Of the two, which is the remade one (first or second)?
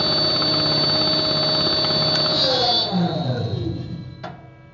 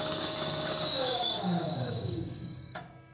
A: second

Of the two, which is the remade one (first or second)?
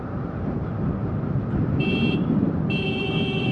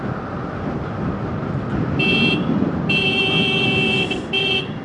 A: first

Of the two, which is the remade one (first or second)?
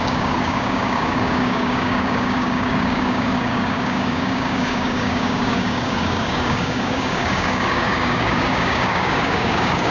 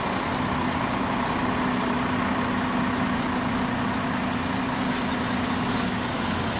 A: first